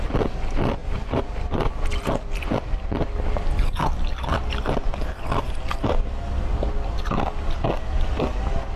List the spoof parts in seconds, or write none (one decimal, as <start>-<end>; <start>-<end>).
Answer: none